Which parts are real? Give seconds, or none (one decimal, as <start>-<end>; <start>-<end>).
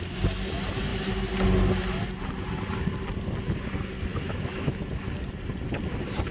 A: 0.0-4.1; 4.8-6.3